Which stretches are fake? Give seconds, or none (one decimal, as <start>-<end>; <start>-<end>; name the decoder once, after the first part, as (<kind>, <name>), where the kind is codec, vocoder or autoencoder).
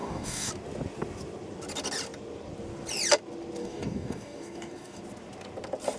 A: 0.0-0.5 (codec, DAC); 3.6-5.0